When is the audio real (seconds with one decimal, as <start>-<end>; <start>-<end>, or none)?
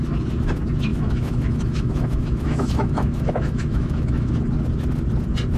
0.0-0.9; 4.3-5.6